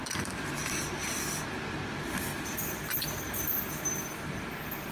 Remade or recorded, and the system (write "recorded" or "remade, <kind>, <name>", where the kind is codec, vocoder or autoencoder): recorded